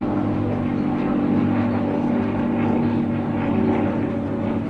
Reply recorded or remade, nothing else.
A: recorded